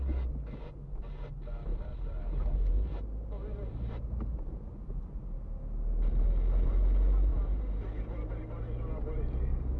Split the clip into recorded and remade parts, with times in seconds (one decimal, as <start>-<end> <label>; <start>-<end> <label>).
0.0-1.7 recorded; 1.7-5.0 remade; 5.0-7.3 recorded; 7.3-7.8 remade; 7.8-9.8 recorded